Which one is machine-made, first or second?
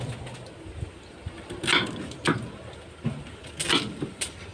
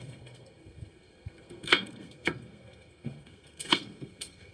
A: second